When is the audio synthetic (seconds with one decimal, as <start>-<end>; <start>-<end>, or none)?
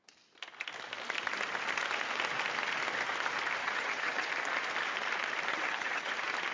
3.6-4.3; 5.5-6.1